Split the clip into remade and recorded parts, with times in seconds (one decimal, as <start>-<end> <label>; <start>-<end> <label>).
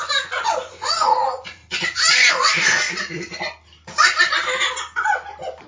0.0-1.6 remade; 1.6-2.3 recorded; 2.3-2.7 remade; 2.7-5.7 recorded